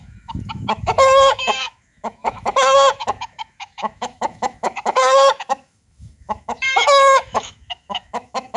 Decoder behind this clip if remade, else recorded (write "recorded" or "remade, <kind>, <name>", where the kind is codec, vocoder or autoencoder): remade, autoencoder, DAC-VAE